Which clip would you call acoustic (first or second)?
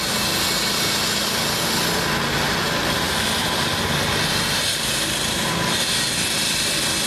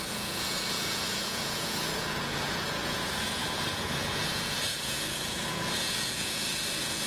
first